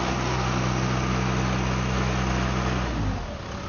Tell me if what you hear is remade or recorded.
recorded